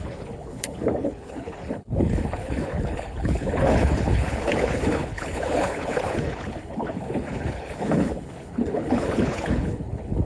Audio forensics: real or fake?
fake